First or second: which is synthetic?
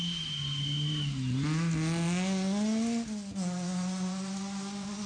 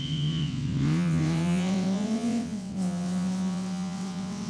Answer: second